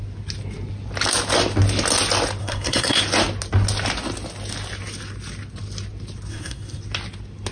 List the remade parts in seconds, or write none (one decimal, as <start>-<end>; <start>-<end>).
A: 2.4-3.0; 6.3-6.8